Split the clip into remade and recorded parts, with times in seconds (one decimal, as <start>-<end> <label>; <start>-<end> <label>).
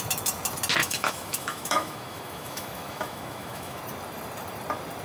0.0-0.8 recorded; 0.8-3.8 remade; 3.8-5.0 recorded